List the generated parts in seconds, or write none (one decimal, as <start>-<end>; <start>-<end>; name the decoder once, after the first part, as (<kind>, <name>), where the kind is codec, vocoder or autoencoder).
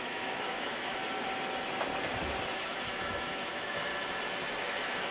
0.0-1.0 (autoencoder, DAC-VAE); 2.5-3.9; 4.6-5.1